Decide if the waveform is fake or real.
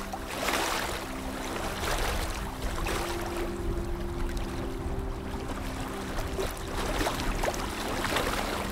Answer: real